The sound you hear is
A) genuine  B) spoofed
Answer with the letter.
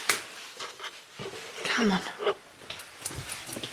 A